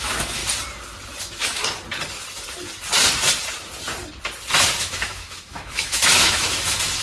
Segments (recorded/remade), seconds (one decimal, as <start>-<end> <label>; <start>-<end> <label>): 0.0-0.4 remade; 0.4-1.2 recorded; 1.2-1.6 remade; 1.6-4.8 recorded; 4.8-7.0 remade